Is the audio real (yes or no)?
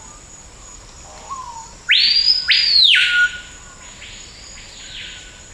yes